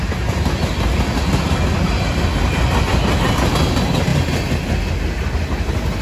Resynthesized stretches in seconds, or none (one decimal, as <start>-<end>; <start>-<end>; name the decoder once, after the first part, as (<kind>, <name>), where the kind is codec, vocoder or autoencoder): none